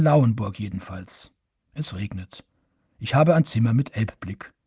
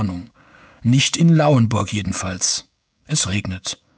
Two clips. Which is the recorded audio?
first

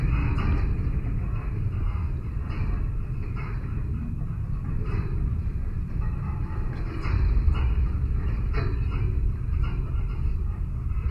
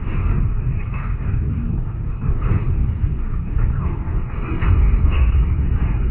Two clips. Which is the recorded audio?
first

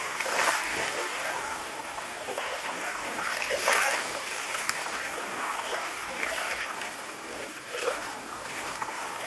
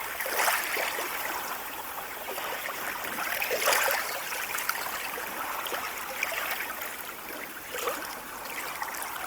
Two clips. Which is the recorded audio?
second